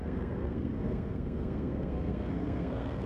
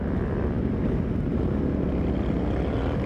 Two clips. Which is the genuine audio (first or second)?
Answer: second